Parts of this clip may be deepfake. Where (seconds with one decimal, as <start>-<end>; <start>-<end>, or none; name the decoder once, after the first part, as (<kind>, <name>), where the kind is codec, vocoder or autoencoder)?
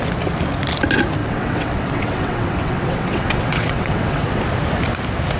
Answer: 1.2-4.4 (vocoder, WaveNeXt)